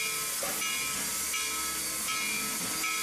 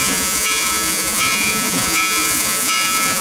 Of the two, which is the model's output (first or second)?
second